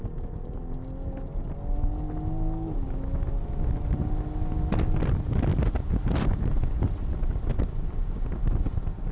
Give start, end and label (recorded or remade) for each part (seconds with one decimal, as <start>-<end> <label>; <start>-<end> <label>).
0.0-5.5 recorded; 5.5-6.4 remade; 6.4-9.1 recorded